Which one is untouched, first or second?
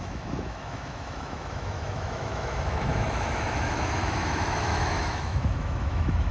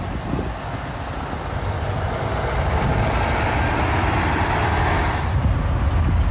second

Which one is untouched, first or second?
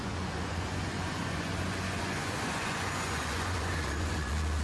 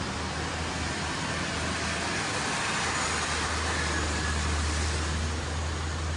second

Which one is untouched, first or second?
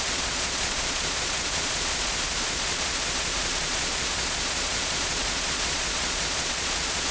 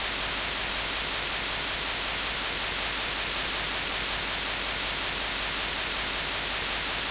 second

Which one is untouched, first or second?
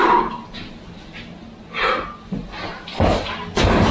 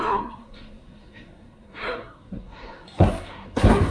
first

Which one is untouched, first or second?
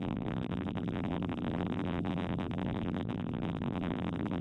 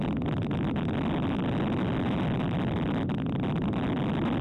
second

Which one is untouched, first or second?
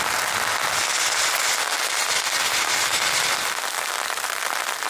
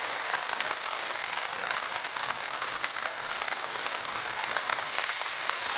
first